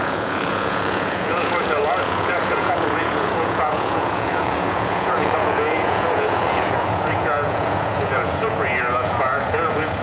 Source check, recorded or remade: remade